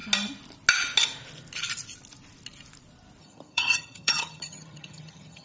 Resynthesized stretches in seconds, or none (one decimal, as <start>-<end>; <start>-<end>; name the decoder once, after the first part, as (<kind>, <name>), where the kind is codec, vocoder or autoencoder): 3.2-5.4 (vocoder, HiFi-GAN)